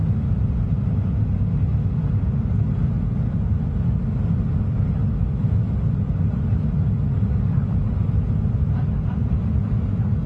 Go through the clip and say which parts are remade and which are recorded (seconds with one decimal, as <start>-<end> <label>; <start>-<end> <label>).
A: 0.0-10.3 recorded